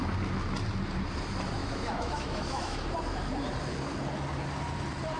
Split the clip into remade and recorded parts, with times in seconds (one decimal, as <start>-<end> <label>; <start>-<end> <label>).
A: 0.0-1.6 recorded; 1.6-2.8 remade; 2.8-5.2 recorded